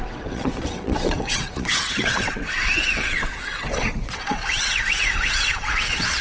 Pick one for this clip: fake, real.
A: fake